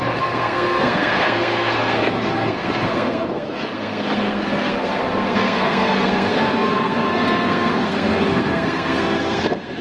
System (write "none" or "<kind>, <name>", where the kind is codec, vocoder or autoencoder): codec, SNAC